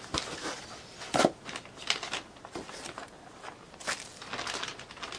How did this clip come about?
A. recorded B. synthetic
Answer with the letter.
A